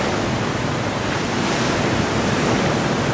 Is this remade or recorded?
recorded